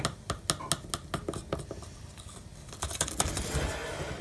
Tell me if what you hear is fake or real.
real